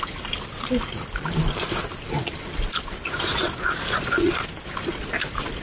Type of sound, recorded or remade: recorded